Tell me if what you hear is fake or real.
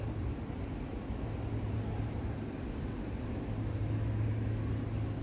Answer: real